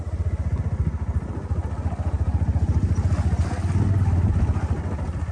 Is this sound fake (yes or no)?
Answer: no